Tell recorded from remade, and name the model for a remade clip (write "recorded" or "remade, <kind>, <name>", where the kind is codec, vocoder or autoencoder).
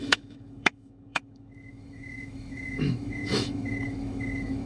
remade, autoencoder, DAC-VAE